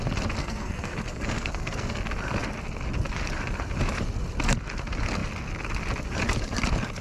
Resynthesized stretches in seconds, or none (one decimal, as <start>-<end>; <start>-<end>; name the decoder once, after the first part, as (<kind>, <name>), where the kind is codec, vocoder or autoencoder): 0.4-2.0 (codec, SNAC)